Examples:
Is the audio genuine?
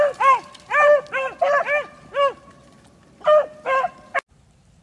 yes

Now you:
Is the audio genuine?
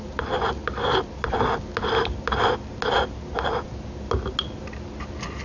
yes